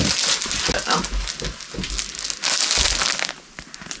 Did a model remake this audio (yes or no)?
no